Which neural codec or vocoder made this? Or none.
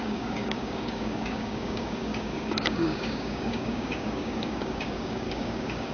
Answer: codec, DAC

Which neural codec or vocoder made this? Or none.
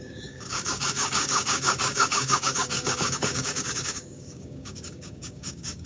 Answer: codec, DAC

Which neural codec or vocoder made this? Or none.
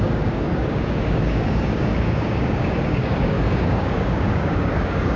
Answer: codec, DAC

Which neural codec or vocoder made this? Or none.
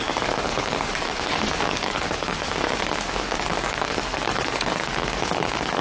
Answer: codec, DAC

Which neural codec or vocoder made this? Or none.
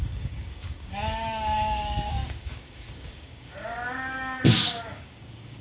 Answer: codec, DAC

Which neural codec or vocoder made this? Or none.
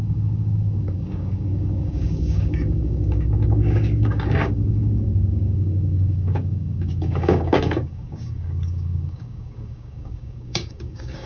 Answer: codec, DAC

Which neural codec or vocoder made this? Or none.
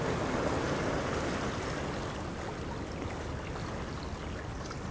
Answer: none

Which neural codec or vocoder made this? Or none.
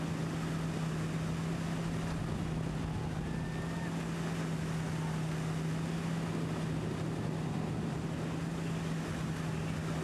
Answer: none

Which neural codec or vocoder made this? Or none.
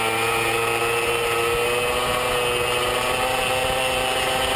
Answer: none